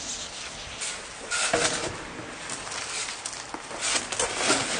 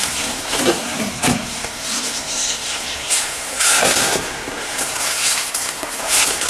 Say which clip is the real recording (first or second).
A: first